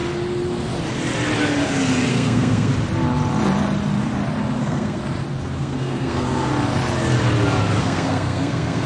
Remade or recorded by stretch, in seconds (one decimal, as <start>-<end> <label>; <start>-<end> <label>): 0.0-2.1 recorded; 2.1-2.7 remade; 2.7-4.6 recorded; 4.6-5.0 remade; 5.0-5.6 recorded; 5.6-6.5 remade; 6.5-7.8 recorded; 7.8-8.9 remade